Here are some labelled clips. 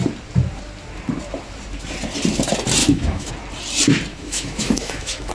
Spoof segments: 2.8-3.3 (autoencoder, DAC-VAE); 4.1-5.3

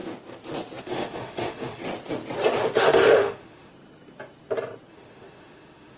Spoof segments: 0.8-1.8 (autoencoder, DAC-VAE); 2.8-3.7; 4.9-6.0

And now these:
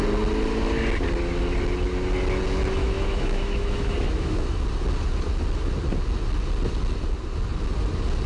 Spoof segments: 2.8-4.6 (autoencoder, DAC-VAE)